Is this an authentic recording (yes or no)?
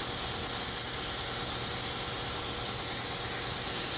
yes